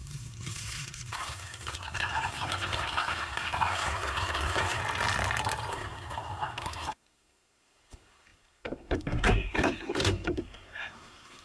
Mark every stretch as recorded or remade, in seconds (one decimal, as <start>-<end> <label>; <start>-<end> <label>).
0.0-4.8 remade; 4.8-5.7 recorded; 5.7-11.4 remade